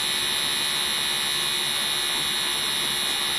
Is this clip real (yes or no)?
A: yes